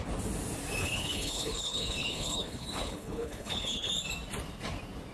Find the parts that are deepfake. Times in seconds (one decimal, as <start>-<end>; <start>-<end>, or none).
0.8-3.9